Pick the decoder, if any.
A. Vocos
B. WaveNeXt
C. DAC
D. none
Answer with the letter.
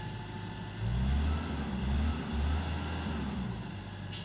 D